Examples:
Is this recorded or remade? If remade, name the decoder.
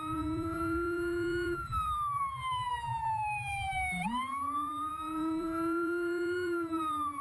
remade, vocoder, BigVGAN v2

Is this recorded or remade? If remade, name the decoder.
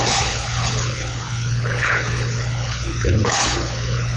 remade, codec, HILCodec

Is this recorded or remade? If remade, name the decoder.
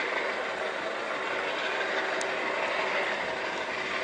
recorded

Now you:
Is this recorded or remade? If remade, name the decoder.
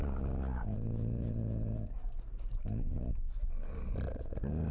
recorded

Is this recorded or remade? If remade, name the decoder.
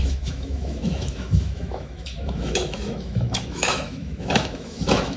remade, autoencoder, DAC-VAE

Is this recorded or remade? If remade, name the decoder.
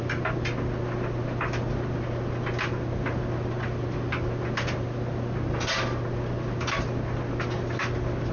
recorded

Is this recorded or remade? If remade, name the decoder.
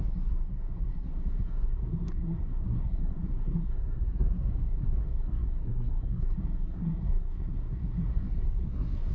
remade, codec, SNAC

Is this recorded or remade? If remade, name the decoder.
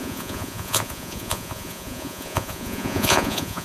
remade, vocoder, Vocos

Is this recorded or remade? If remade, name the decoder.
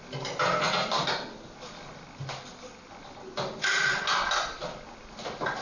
recorded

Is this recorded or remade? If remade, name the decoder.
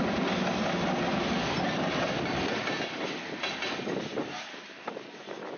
recorded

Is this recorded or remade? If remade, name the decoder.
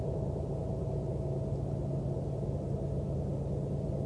recorded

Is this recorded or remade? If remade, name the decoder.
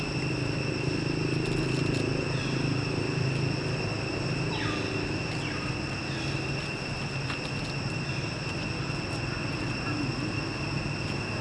recorded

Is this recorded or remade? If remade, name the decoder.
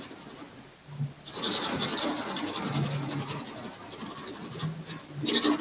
recorded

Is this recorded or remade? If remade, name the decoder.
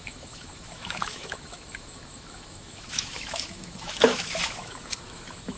remade, autoencoder, DAC-VAE